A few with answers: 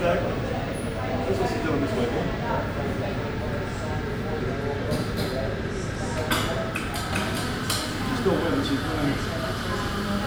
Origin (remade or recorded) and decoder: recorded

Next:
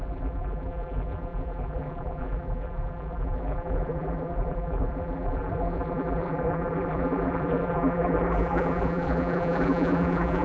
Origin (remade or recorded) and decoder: remade, vocoder, BigVGAN v2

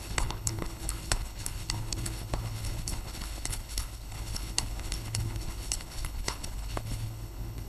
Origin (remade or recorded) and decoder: remade, codec, HILCodec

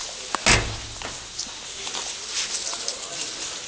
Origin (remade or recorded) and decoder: recorded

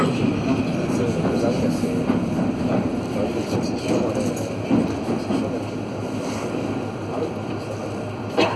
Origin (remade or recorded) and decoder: recorded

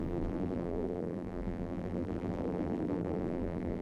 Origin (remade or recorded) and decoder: remade, vocoder, BigVGAN v2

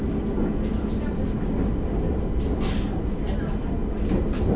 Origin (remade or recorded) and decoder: recorded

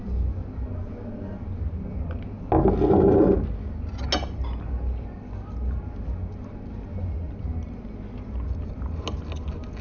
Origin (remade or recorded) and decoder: recorded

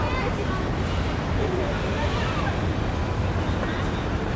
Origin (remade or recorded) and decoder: recorded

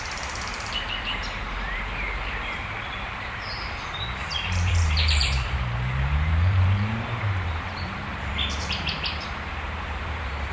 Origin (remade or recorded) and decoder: remade, vocoder, BigVGAN v2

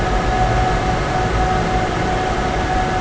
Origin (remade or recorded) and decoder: recorded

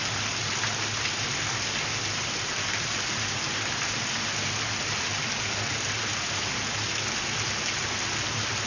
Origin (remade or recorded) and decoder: recorded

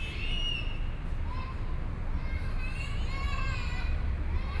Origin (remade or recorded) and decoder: recorded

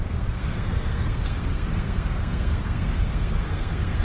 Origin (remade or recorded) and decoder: remade, codec, SNAC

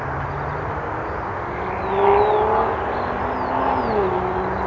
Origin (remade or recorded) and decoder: recorded